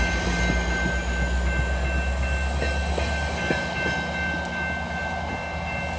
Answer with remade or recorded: recorded